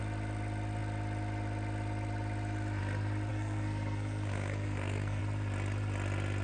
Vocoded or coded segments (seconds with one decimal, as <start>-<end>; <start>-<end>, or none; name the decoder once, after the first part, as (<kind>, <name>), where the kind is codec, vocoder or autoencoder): 3.3-5.2 (codec, SNAC)